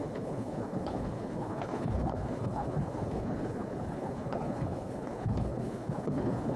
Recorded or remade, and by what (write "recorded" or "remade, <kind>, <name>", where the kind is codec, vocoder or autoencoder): remade, codec, HILCodec